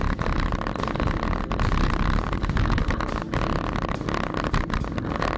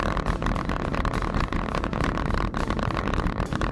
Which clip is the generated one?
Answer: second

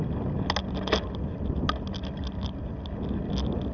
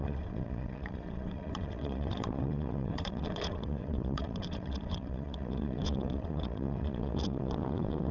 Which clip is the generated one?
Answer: second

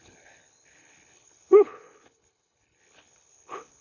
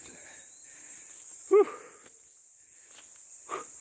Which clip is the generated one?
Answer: first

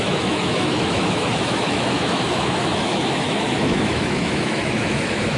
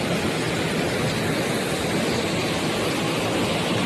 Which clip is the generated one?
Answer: first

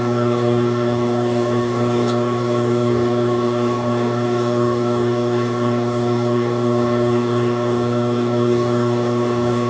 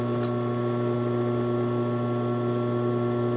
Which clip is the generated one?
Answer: first